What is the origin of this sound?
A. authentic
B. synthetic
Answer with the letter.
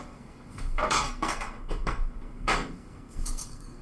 B